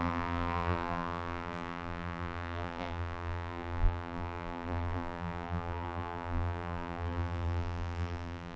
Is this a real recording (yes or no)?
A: no